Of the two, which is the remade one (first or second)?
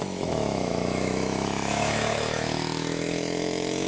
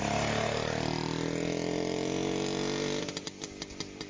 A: first